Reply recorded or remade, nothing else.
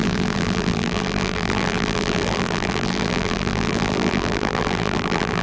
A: remade